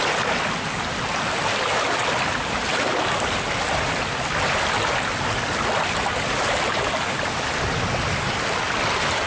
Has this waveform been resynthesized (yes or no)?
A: no